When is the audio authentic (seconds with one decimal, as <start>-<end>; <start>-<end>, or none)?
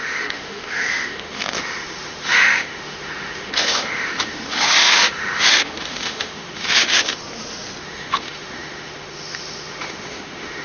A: 7.2-7.8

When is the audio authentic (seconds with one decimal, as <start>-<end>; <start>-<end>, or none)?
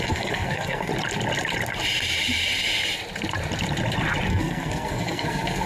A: 0.9-4.3